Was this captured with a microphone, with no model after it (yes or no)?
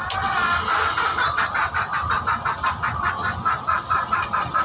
yes